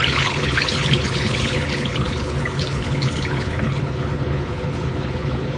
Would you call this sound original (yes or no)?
no